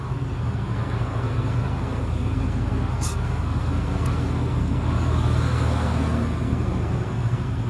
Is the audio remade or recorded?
remade